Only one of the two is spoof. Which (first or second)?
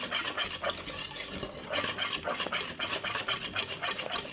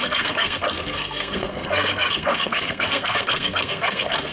second